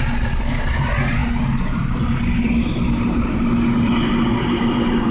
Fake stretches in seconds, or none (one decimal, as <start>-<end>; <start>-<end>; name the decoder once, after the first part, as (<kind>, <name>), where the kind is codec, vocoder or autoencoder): none